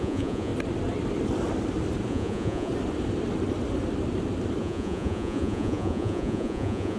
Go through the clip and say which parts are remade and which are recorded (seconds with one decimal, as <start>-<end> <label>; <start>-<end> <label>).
0.0-0.5 remade; 0.5-2.1 recorded; 2.1-2.7 remade; 2.7-4.6 recorded; 4.6-7.0 remade